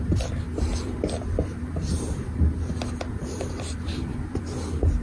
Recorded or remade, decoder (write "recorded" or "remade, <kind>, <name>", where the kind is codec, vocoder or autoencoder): remade, vocoder, BigVGAN v2